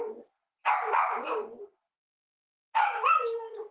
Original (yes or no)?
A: yes